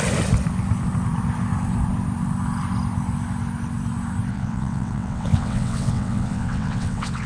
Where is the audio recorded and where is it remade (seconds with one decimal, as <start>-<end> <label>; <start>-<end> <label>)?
0.0-4.3 recorded; 4.3-7.3 remade